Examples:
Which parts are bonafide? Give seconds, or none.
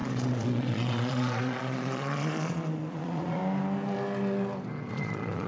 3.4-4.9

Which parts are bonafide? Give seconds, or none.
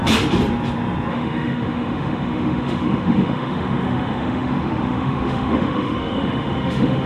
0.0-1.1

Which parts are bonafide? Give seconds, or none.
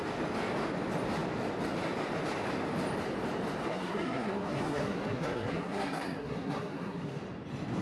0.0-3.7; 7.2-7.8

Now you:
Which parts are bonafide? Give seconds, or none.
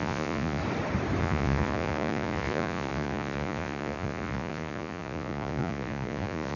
0.6-1.2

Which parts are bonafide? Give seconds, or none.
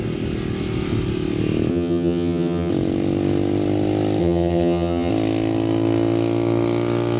0.0-1.7; 2.7-4.2; 5.1-7.2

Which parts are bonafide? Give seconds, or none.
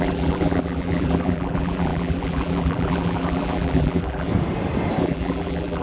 4.3-5.0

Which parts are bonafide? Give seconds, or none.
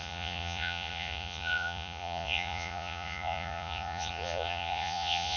none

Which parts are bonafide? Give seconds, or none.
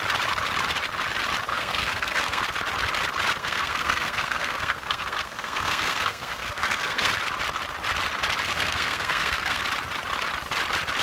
0.0-1.5; 2.4-3.4; 7.1-8.5; 9.6-11.0